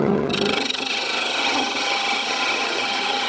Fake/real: fake